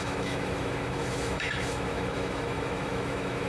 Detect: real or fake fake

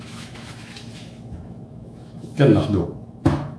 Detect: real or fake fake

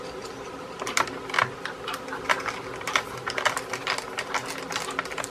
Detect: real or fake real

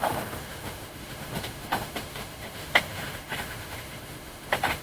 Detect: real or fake fake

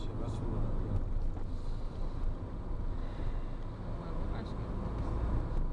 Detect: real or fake real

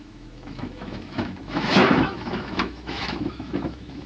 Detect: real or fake fake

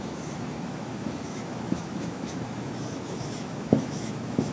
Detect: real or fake fake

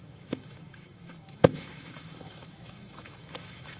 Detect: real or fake fake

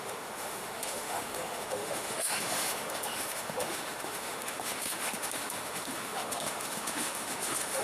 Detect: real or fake fake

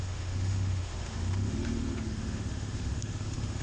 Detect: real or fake fake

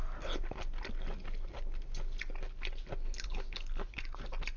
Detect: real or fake real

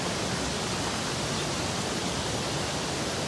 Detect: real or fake real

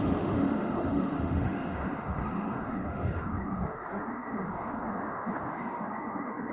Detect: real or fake fake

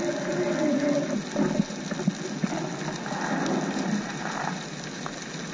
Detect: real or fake real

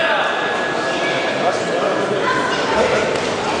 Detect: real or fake real